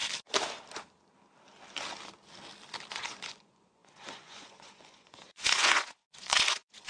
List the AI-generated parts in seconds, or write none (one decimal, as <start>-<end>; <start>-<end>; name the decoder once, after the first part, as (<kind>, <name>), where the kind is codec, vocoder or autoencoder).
2.9-6.9 (vocoder, Vocos)